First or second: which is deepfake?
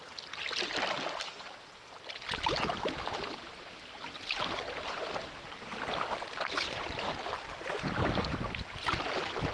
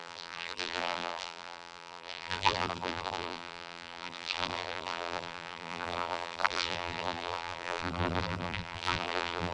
second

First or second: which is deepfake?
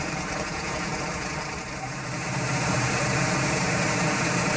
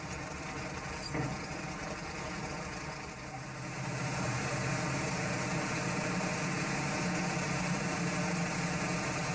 first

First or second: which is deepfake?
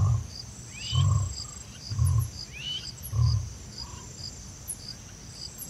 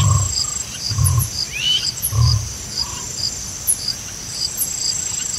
second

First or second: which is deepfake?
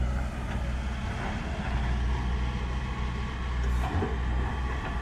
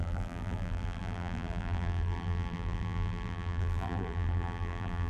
second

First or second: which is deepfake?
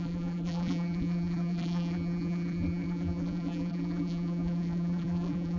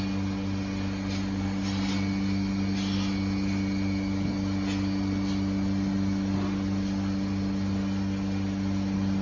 first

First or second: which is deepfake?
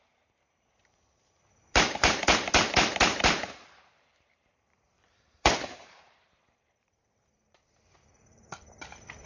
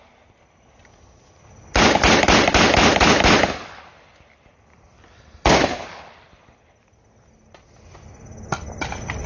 first